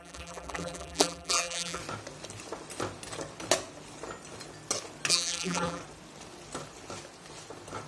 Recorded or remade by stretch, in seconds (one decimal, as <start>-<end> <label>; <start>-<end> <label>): 0.0-1.8 remade; 1.8-5.1 recorded; 5.1-5.8 remade; 5.8-7.9 recorded